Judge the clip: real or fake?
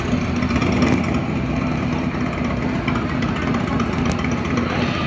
real